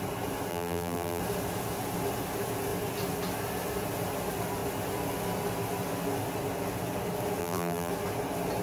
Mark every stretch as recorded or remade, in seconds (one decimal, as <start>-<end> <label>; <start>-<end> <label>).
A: 0.0-0.5 recorded; 0.5-1.2 remade; 1.2-7.4 recorded; 7.4-7.9 remade; 7.9-8.6 recorded